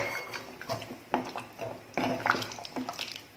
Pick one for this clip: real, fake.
real